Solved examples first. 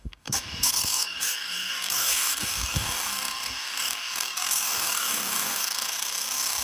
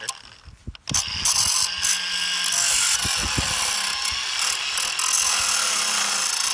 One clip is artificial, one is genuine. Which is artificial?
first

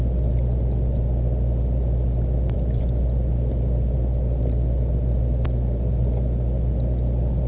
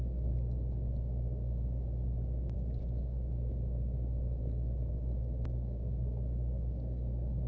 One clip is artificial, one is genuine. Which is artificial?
second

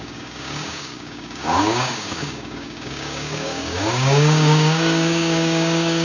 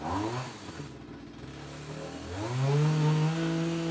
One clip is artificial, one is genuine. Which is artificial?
first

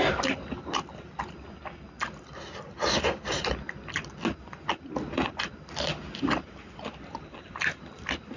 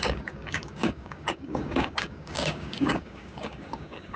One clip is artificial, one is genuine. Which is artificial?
second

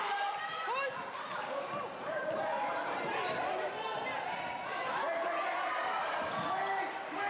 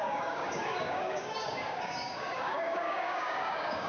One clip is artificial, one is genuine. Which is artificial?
second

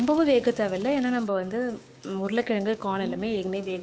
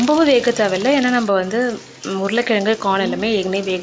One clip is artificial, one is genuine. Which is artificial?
first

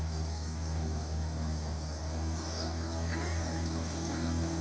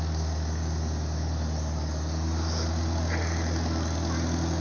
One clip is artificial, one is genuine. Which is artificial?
first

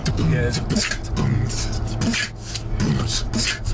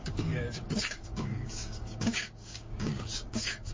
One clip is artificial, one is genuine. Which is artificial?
second